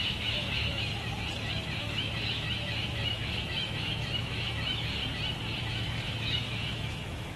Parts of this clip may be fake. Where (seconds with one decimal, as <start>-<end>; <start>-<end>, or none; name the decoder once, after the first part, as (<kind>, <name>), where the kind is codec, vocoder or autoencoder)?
0.0-0.9 (autoencoder, DAC-VAE); 1.8-5.0; 5.6-7.4